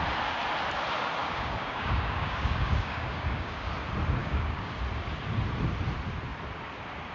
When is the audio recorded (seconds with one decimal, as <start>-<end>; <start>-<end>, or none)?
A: 0.0-1.2; 3.7-4.2; 4.7-7.1